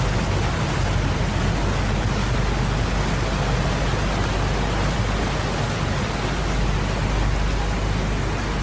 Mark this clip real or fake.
real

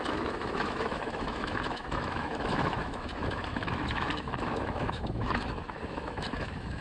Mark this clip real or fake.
fake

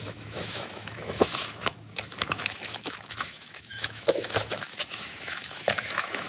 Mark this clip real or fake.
fake